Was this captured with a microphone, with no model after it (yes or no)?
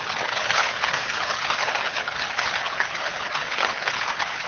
no